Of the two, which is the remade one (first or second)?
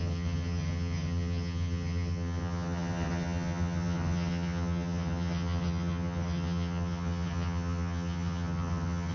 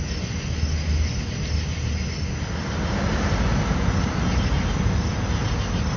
first